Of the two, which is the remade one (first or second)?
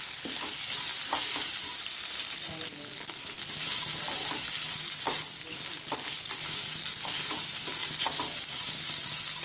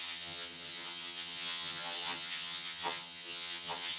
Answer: second